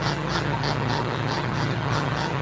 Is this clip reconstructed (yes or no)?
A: yes